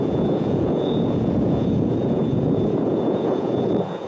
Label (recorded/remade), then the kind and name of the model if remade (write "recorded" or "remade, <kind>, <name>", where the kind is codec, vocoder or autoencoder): remade, vocoder, Vocos